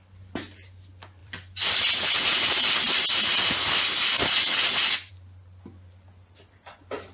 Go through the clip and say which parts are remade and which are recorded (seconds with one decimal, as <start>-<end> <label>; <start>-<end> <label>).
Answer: 0.0-1.2 recorded; 1.2-5.1 remade; 5.1-7.1 recorded